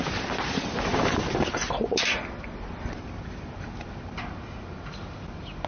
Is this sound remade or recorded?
recorded